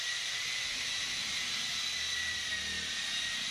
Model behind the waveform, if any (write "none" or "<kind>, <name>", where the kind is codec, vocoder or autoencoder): vocoder, BigVGAN v2